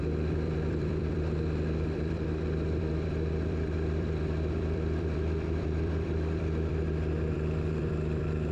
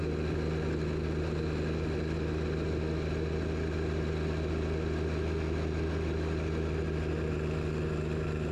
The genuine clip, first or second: second